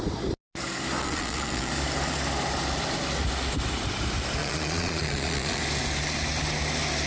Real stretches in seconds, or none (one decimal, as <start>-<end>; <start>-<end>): 0.0-1.0; 1.7-4.4; 5.6-7.1

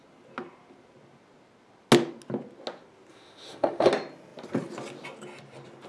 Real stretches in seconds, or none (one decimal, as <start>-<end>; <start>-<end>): 0.0-3.1; 3.9-5.9

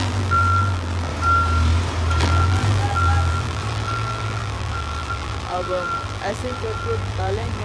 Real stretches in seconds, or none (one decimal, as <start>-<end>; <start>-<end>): 1.1-2.2

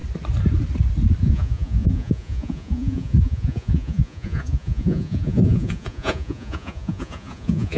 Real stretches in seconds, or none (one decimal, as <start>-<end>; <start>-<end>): 0.0-1.2

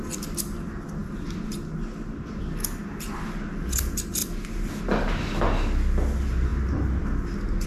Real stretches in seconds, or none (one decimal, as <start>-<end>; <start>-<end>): 0.0-7.7

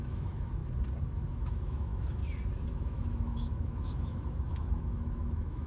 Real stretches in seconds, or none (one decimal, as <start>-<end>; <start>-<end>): 0.6-1.3; 2.2-2.7

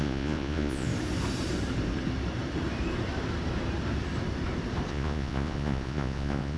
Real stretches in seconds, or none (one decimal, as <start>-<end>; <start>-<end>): 0.9-4.9